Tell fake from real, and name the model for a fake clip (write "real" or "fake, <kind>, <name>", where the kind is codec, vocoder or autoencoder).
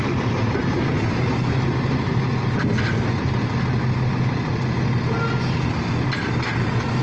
real